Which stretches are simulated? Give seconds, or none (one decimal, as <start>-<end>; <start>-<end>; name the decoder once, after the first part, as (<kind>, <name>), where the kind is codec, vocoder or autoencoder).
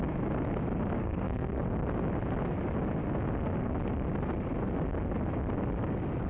1.0-1.6 (codec, SNAC)